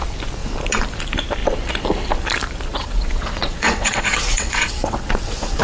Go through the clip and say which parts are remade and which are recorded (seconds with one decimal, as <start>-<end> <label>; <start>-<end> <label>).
0.0-2.7 recorded; 2.7-5.6 remade